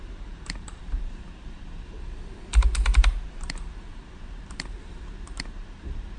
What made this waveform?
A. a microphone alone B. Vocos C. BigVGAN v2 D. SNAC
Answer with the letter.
C